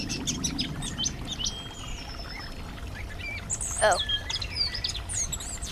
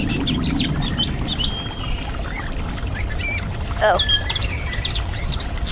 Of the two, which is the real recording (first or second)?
first